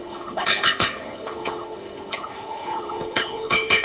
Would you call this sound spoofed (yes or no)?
yes